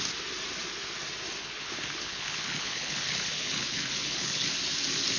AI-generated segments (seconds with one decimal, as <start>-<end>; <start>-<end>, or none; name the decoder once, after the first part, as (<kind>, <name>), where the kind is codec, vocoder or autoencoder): 1.4-4.5 (codec, HILCodec)